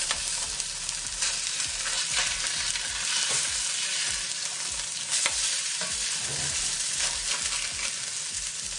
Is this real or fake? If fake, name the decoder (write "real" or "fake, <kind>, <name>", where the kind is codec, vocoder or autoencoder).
real